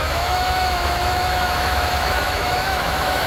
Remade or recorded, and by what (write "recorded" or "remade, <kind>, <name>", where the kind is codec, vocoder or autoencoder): remade, autoencoder, DAC-VAE